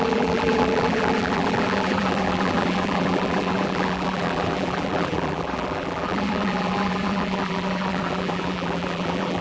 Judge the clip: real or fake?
fake